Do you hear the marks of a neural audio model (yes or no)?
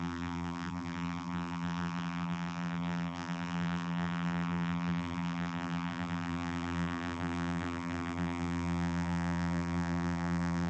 yes